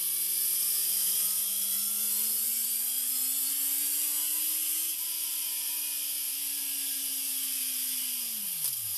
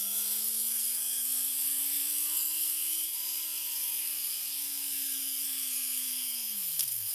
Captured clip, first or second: first